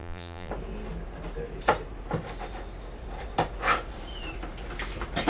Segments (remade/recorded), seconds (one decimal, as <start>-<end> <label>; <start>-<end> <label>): 0.0-0.5 remade; 0.5-5.3 recorded

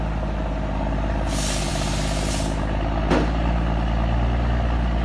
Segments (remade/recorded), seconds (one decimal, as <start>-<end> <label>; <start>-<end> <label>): 0.0-5.0 recorded